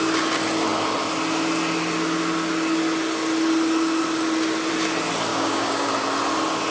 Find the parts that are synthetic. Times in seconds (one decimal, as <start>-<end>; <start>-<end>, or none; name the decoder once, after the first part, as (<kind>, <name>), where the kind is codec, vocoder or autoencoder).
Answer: 5.3-5.9 (codec, DAC)

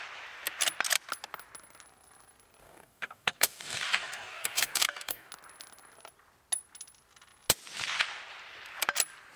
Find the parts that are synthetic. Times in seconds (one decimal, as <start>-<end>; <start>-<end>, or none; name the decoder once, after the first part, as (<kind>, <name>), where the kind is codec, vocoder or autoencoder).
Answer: 2.6-5.3 (codec, DAC)

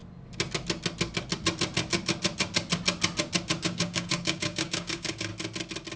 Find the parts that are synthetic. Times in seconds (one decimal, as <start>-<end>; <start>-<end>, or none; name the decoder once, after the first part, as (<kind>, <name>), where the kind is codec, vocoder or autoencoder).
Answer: 3.6-5.3 (codec, DAC)

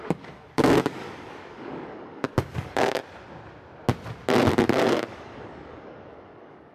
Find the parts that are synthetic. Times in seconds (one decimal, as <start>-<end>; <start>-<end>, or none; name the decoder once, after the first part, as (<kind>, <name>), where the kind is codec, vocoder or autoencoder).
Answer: 0.0-3.0 (codec, DAC); 4.8-6.7

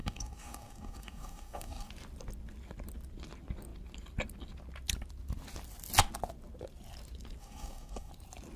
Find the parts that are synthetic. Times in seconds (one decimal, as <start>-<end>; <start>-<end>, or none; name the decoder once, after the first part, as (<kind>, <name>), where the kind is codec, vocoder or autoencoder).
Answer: 0.0-1.9 (codec, DAC); 7.4-8.1

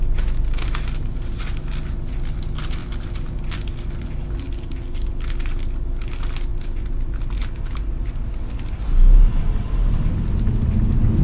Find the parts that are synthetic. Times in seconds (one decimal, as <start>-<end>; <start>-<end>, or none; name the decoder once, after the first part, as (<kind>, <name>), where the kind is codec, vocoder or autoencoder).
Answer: none